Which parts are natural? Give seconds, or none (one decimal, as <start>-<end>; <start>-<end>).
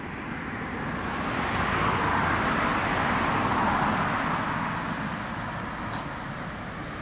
0.0-7.0